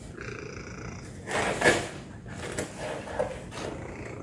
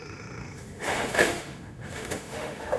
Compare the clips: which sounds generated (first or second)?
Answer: second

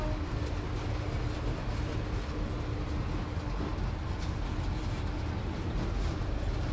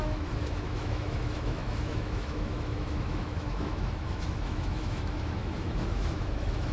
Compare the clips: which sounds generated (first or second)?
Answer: second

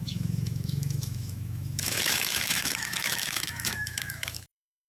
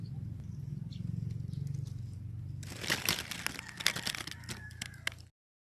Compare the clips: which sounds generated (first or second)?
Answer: first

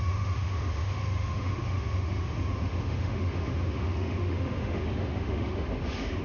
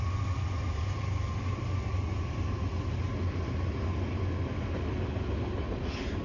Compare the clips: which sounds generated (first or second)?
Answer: first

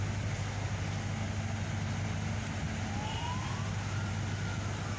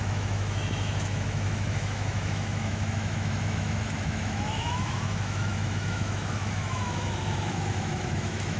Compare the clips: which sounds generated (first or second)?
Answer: second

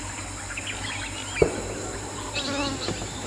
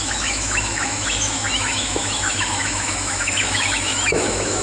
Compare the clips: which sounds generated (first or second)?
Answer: second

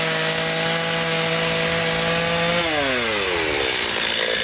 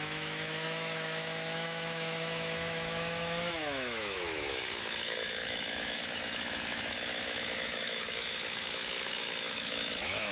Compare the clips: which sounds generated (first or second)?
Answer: second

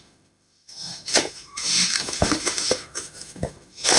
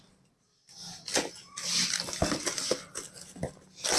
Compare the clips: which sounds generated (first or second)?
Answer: first